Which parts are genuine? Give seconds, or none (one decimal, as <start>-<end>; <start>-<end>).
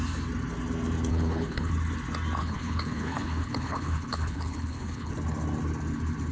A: 0.0-1.1; 1.7-2.4; 5.1-6.3